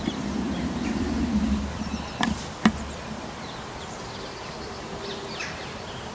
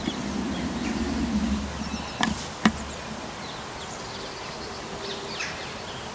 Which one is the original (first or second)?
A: second